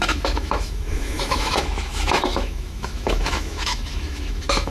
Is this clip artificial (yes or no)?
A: yes